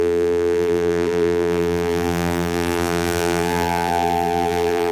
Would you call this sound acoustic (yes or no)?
no